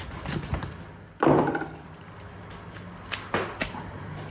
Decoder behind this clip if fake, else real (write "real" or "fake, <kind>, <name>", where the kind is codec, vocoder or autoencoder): real